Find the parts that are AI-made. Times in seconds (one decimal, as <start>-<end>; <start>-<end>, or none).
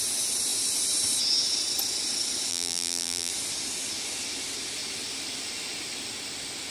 2.5-3.3